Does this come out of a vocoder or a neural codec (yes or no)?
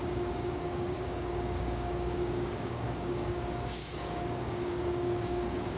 yes